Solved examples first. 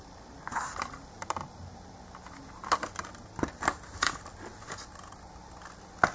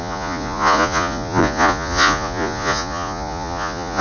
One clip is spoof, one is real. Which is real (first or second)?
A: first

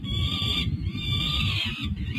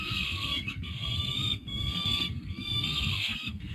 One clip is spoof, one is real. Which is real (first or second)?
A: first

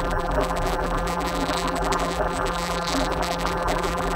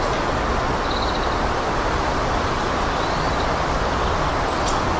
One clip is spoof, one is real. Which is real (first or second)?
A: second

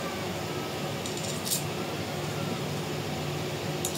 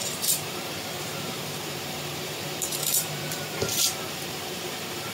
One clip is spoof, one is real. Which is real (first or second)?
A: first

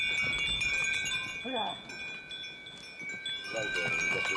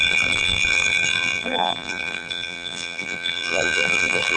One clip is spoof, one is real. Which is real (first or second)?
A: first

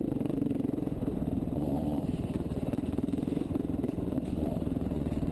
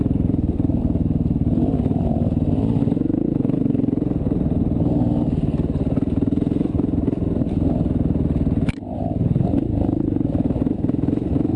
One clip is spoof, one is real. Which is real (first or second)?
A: second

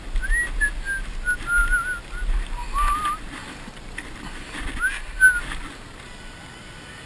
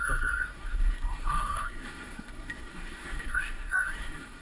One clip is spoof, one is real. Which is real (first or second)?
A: first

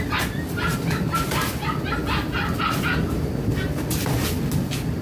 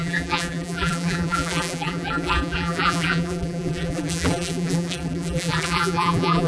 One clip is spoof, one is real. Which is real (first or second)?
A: first